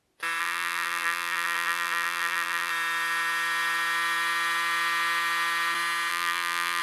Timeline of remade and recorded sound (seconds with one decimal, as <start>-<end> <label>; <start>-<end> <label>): 0.0-0.4 recorded; 0.4-2.7 remade; 2.7-6.1 recorded; 6.1-6.8 remade